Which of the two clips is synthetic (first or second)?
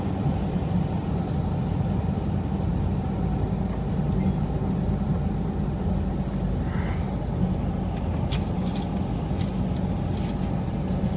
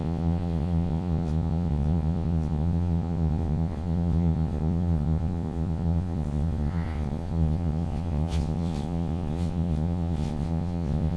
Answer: second